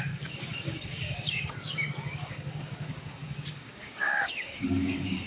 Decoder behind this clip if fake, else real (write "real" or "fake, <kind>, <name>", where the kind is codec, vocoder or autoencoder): fake, codec, DAC